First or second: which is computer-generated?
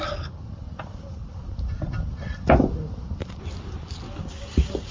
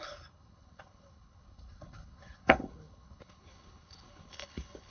second